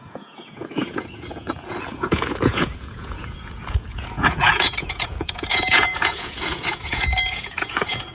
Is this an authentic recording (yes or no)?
no